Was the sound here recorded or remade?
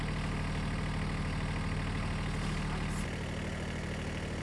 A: recorded